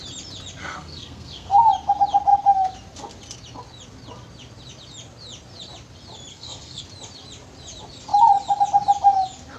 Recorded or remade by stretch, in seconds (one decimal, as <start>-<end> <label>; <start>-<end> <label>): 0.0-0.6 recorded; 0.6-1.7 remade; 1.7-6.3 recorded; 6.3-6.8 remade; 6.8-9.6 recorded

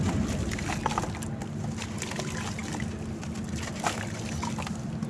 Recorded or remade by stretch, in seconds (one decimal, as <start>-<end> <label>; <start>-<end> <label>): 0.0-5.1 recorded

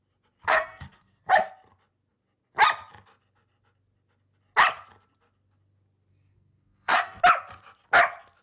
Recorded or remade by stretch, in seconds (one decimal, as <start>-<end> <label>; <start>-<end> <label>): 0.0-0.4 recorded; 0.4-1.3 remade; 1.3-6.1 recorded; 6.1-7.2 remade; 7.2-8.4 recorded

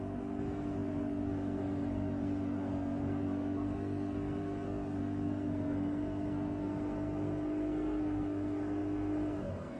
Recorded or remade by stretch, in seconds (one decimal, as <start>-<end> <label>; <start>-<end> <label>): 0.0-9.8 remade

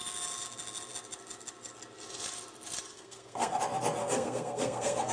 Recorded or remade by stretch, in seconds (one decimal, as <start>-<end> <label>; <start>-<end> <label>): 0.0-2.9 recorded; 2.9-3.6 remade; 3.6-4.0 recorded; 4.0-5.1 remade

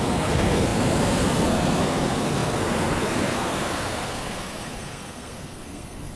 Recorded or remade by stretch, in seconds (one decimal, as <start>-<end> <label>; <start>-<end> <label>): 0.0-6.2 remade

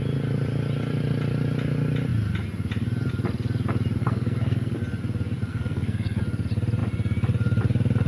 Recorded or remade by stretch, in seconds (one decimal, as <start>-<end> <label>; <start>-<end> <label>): 0.0-4.0 recorded; 4.0-4.8 remade; 4.8-5.5 recorded; 5.5-6.2 remade; 6.2-8.1 recorded